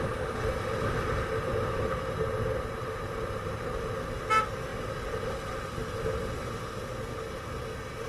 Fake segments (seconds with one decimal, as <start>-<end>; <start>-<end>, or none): none